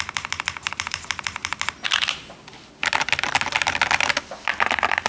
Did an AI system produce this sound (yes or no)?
no